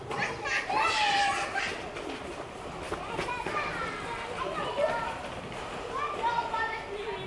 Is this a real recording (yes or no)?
yes